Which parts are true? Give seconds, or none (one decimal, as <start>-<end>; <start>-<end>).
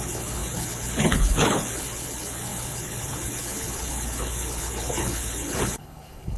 none